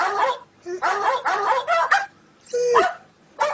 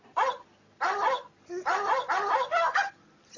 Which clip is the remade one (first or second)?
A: first